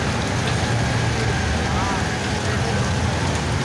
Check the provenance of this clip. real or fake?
real